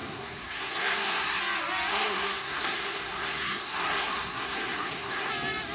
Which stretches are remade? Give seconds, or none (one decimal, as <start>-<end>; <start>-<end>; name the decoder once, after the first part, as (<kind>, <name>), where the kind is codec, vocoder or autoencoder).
0.0-1.4 (codec, SNAC); 1.9-5.3